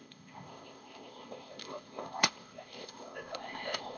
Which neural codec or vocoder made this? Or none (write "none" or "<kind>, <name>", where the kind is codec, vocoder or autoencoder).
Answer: codec, ZipCodec